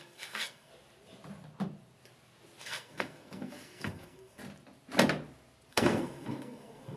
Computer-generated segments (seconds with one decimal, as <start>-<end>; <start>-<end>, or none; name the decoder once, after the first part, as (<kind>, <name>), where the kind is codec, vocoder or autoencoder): 0.0-0.7 (codec, SNAC); 2.6-4.4; 5.7-7.0